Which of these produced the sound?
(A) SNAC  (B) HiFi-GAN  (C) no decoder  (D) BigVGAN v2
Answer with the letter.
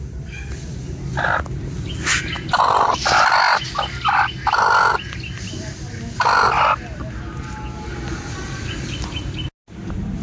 C